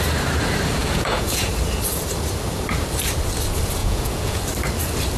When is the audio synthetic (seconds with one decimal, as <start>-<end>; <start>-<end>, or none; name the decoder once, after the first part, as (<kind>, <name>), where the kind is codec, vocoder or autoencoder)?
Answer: 0.8-1.5 (vocoder, Vocos); 3.8-4.4